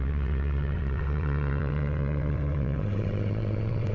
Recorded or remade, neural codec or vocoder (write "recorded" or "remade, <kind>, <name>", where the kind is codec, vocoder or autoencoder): remade, vocoder, WaveNeXt